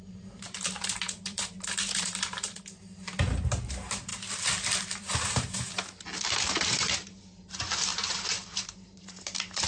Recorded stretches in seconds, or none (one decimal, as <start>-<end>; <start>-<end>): 4.1-4.8